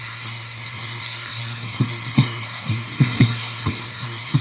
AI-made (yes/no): yes